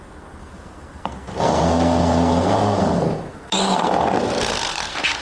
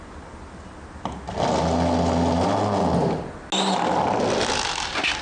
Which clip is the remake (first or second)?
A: first